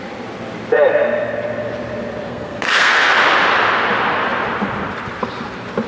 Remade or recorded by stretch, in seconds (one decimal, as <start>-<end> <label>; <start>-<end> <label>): 0.0-2.3 recorded; 2.3-3.1 remade; 3.1-5.9 recorded